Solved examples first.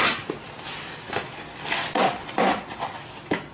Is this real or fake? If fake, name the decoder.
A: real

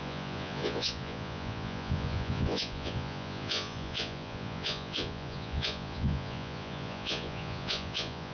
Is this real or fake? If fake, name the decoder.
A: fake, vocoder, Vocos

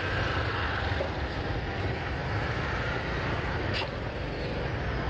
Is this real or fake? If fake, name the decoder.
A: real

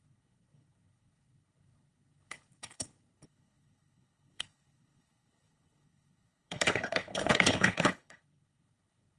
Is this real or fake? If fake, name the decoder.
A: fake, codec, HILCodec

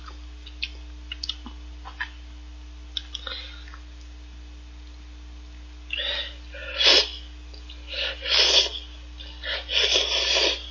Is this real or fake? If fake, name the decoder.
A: real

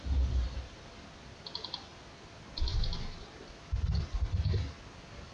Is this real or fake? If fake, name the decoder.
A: real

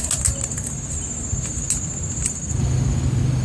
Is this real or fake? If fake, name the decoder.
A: real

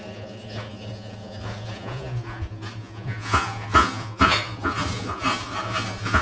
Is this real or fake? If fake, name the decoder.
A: fake, vocoder, Vocos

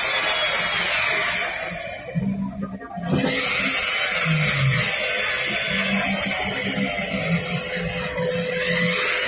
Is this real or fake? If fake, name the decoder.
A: real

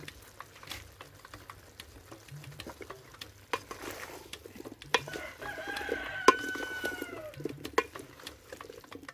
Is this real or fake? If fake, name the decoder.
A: real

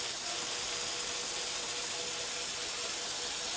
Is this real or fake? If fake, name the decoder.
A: real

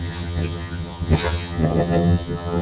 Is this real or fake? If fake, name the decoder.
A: fake, vocoder, HiFi-GAN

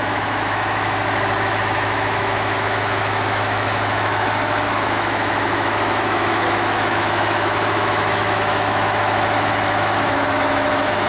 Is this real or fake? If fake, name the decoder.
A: fake, autoencoder, DAC-VAE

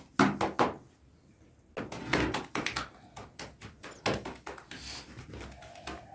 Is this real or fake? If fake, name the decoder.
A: real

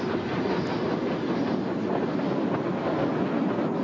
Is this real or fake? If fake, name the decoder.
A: real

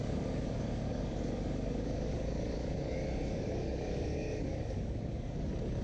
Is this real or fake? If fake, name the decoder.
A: fake, codec, DAC